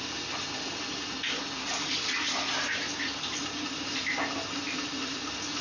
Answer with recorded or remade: recorded